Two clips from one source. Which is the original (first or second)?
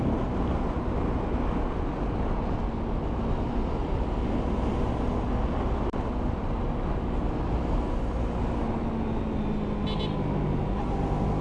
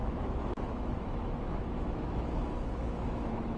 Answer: first